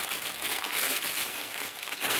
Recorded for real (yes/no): no